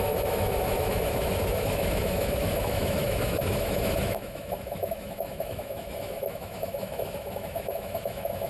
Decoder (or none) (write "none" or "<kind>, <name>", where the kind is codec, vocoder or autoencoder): autoencoder, DAC-VAE